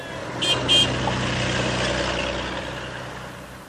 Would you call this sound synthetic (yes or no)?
no